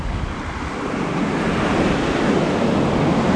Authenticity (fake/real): real